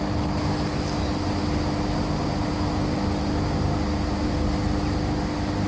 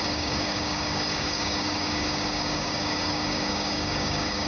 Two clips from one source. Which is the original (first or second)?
first